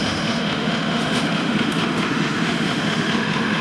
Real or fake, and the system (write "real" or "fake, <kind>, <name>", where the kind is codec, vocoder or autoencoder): fake, autoencoder, DAC-VAE